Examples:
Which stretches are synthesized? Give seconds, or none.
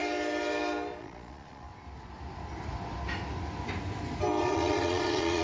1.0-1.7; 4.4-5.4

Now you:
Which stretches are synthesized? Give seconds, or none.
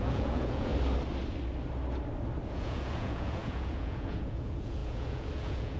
0.0-0.7; 2.5-5.8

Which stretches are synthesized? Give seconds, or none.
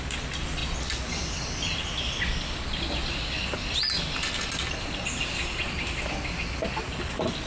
none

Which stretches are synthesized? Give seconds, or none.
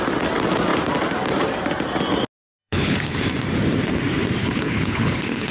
2.6-3.2; 4.4-5.5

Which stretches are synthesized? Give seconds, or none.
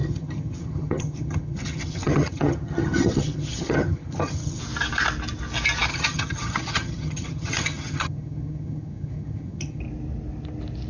0.0-4.6; 5.9-9.8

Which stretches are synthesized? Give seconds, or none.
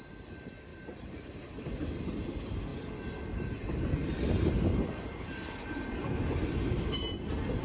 0.7-1.4